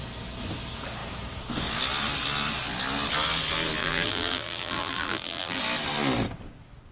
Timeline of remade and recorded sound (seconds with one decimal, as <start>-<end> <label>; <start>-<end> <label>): 0.0-3.8 recorded; 3.8-5.6 remade; 5.6-6.9 recorded